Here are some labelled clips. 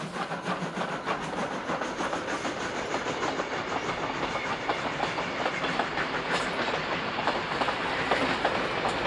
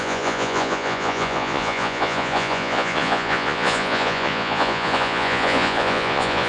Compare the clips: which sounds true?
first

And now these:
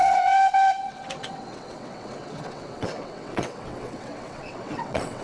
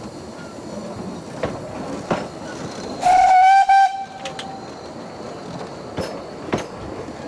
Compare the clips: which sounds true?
second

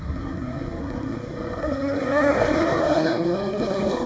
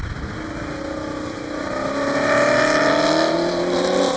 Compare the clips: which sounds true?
second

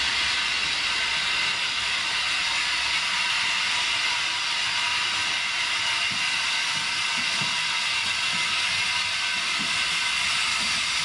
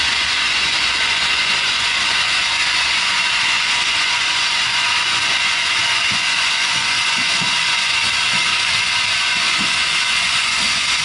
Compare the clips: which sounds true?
first